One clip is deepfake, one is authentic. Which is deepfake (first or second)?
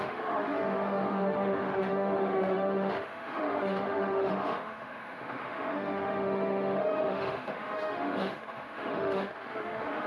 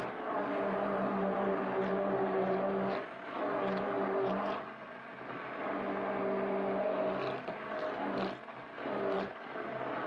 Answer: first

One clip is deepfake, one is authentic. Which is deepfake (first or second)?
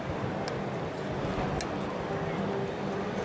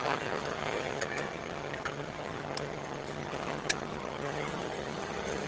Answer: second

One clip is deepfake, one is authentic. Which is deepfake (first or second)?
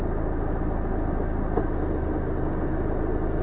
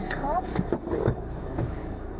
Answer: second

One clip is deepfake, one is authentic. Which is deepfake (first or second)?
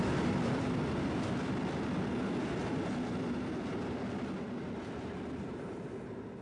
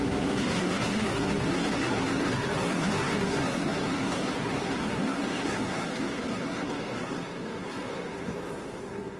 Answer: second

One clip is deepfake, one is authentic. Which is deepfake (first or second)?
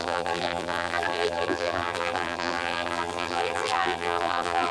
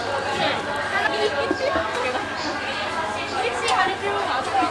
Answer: first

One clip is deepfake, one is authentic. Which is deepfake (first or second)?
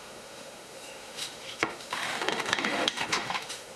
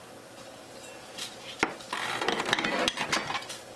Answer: first